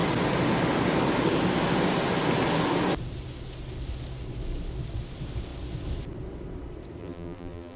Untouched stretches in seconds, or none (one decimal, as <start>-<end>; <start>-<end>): 0.0-7.0